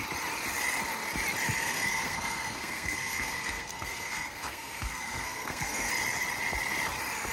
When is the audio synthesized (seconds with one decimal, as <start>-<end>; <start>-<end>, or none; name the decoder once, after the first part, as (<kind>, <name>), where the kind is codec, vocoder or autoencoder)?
1.6-5.9 (codec, SNAC)